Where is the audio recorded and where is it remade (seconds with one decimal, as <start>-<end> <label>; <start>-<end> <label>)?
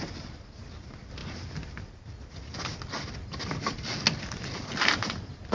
0.0-5.5 recorded